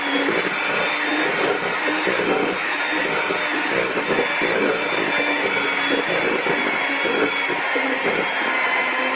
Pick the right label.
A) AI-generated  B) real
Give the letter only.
B